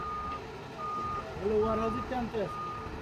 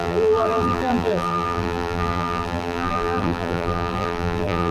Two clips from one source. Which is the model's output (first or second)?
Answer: second